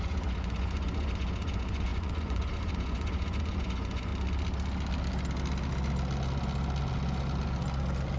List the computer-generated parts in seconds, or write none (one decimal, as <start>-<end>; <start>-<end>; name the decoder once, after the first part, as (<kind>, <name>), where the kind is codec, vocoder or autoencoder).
0.0-4.1 (vocoder, Vocos)